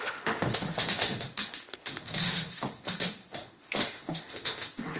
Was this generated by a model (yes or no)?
yes